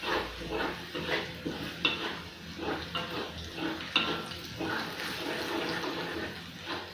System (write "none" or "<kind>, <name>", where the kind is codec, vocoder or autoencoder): none